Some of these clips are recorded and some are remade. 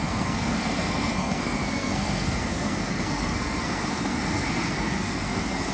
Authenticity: remade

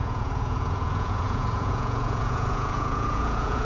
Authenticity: remade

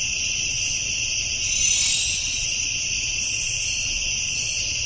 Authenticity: remade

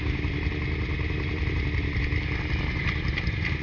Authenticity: recorded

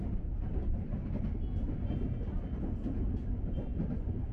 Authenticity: recorded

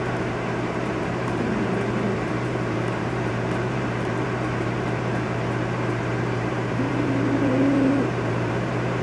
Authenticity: remade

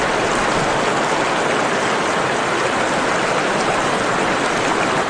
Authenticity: recorded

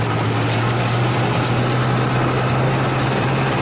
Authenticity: recorded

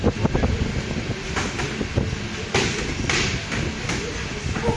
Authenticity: recorded